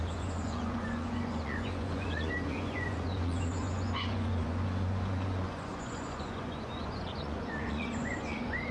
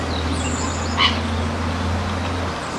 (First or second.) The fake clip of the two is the first